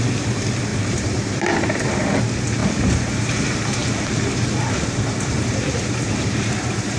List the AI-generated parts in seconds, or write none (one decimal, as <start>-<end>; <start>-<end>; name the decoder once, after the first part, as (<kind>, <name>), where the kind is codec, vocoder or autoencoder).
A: 0.7-2.1 (vocoder, BigVGAN v2); 2.6-7.0